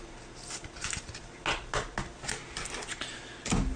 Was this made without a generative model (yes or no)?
yes